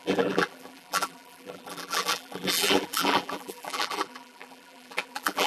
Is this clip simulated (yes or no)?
yes